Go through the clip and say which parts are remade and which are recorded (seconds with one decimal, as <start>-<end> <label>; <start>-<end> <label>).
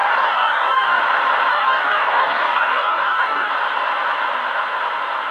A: 0.0-1.0 remade; 1.0-1.5 recorded; 1.5-3.5 remade; 3.5-5.3 recorded